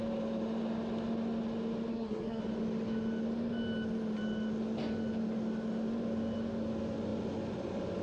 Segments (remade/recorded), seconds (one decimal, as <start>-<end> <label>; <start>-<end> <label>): 0.0-1.9 recorded; 1.9-2.4 remade; 2.4-8.0 recorded